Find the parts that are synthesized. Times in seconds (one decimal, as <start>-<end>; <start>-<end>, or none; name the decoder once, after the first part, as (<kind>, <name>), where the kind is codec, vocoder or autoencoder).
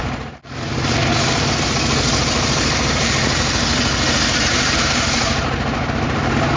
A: 0.0-3.7 (vocoder, BigVGAN v2); 4.4-6.6